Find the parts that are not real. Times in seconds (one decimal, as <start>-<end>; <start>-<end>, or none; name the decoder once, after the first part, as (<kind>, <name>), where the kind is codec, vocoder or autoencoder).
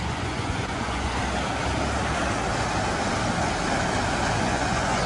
0.0-1.2 (vocoder, Vocos); 4.3-5.1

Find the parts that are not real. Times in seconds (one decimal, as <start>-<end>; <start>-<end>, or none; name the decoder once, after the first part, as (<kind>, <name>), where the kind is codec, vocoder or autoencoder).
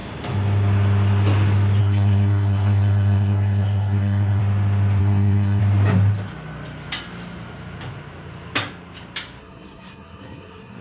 1.8-4.4 (codec, SNAC); 5.0-5.6; 9.4-10.8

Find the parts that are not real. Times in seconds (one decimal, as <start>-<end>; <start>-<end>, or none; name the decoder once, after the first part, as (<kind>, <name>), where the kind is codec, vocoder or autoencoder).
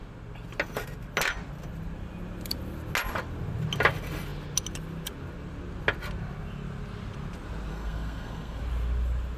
7.7-8.6 (codec, SNAC)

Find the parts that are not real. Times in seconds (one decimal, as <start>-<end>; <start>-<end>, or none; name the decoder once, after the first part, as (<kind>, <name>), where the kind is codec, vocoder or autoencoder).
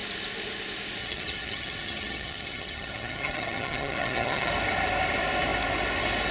1.0-4.5 (vocoder, HiFi-GAN)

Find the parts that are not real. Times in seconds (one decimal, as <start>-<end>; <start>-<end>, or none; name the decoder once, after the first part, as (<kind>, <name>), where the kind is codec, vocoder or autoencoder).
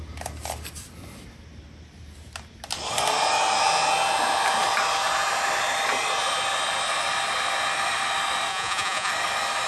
8.5-9.1 (vocoder, Vocos)